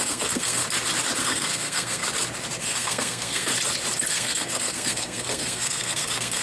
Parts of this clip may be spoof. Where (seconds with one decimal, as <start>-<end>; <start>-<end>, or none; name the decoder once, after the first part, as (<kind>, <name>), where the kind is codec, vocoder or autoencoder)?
0.0-0.6 (codec, SNAC); 1.2-2.0; 2.6-3.5; 4.1-6.4